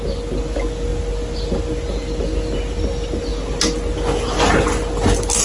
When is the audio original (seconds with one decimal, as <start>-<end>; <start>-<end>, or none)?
0.0-5.4